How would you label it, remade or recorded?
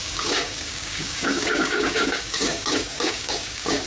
remade